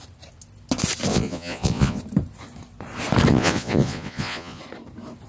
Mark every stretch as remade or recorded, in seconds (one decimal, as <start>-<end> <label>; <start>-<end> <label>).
0.0-1.1 recorded; 1.1-2.0 remade; 2.0-3.3 recorded; 3.3-4.6 remade; 4.6-5.3 recorded